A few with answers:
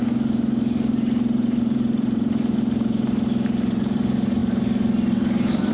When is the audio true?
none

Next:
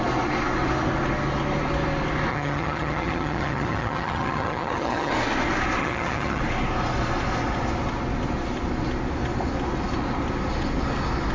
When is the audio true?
0.0-2.3; 5.1-5.8; 6.4-11.3

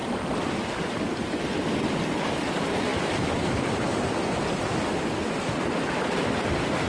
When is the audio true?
0.0-6.9

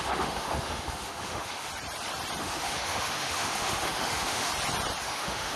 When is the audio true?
1.7-2.4; 4.5-5.0

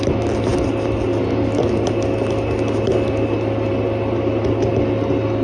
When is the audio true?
0.0-5.4

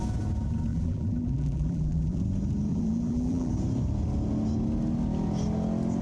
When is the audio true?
0.0-0.7; 2.2-2.7; 3.5-6.0

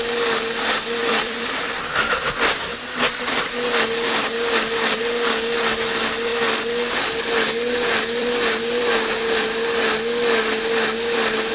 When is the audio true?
0.0-1.0; 1.7-8.2; 8.8-11.5